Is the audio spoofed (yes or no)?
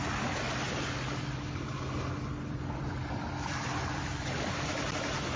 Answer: no